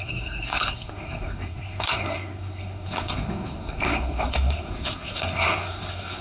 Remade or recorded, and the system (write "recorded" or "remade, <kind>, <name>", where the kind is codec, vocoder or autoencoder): remade, codec, SNAC